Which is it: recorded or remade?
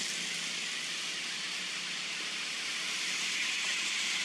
recorded